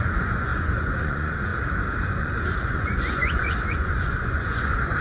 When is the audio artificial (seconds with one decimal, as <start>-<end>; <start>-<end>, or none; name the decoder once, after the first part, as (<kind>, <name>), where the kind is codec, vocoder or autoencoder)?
0.0-1.5 (vocoder, Vocos); 2.1-5.0